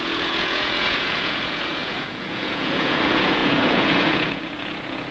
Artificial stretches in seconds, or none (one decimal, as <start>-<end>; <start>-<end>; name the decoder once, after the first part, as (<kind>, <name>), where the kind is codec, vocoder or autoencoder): 0.0-5.1 (vocoder, Vocos)